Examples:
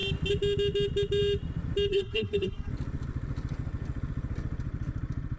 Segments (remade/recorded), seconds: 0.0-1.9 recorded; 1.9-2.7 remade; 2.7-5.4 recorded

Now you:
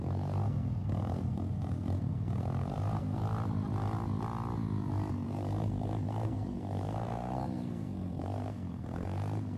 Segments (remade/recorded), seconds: 0.0-3.2 remade; 3.2-5.1 recorded; 5.1-9.6 remade